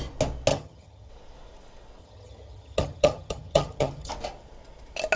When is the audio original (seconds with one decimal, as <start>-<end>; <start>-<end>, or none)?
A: 0.0-0.5; 1.1-2.0; 4.1-5.2